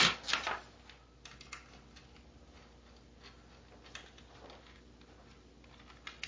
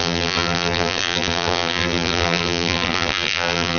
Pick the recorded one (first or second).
first